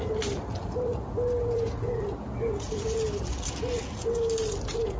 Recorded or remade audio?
recorded